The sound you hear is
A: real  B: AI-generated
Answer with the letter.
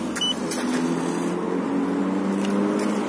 A